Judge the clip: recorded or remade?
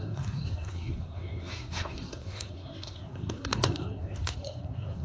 remade